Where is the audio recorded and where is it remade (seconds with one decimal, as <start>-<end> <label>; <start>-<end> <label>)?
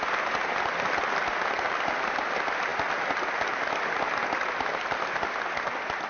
0.0-6.1 recorded